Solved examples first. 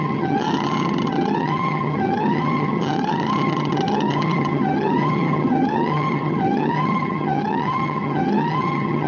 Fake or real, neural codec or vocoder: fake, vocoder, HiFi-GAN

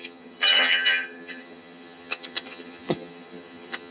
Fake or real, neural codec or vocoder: fake, vocoder, HiFi-GAN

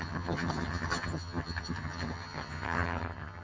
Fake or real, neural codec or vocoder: fake, vocoder, HiFi-GAN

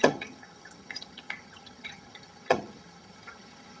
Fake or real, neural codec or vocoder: fake, vocoder, HiFi-GAN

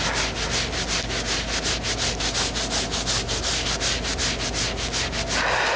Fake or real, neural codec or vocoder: real